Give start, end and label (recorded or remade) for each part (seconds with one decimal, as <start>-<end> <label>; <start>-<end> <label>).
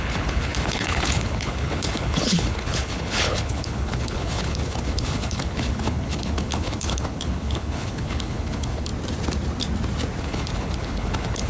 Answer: 0.0-8.9 remade; 8.9-10.2 recorded; 10.2-11.5 remade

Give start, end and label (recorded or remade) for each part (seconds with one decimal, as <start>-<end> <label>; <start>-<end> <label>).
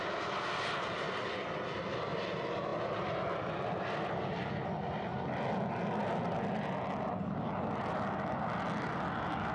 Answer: 0.0-9.5 recorded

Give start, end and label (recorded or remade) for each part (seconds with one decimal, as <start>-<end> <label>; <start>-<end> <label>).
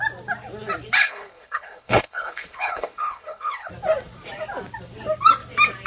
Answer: 0.0-1.0 recorded; 1.0-3.7 remade; 3.7-5.9 recorded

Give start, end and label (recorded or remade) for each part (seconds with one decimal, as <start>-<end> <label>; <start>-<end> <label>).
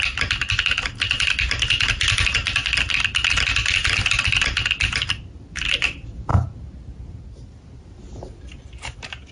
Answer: 0.0-9.3 recorded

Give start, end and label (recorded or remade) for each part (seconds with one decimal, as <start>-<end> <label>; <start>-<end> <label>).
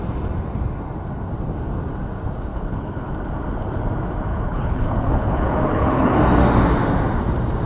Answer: 0.0-2.5 recorded; 2.5-3.1 remade; 3.1-4.3 recorded; 4.3-6.2 remade; 6.2-7.7 recorded